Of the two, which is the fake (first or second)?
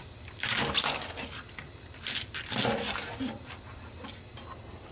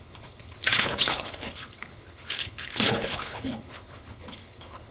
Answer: second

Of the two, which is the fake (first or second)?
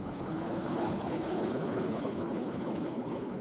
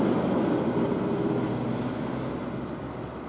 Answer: first